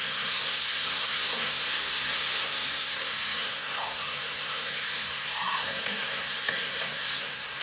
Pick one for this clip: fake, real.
fake